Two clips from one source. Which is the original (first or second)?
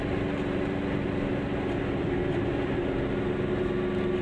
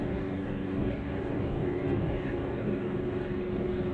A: first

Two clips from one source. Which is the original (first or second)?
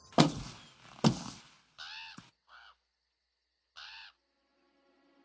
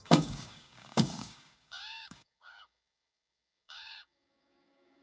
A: first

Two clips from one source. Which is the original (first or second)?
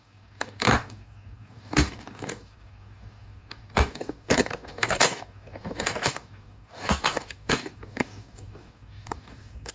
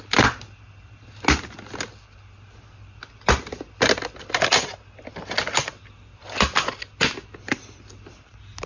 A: second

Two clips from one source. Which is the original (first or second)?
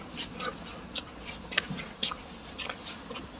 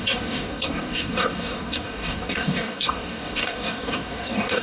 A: first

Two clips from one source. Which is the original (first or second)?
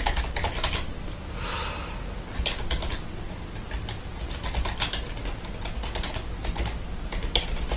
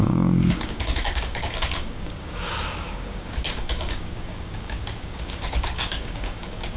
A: first